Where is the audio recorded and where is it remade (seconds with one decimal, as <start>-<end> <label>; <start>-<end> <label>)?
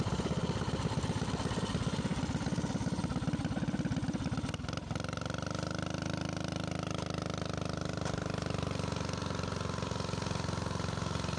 0.0-11.4 recorded